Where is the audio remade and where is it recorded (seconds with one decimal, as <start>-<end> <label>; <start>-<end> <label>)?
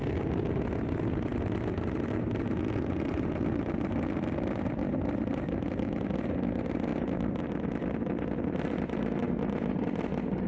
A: 0.0-10.5 recorded